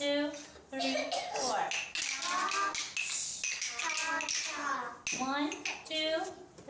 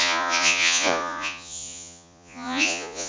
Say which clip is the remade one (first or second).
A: second